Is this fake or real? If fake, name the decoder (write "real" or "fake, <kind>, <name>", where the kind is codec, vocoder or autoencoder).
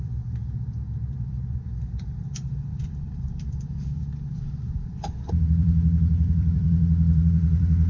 fake, vocoder, BigVGAN v2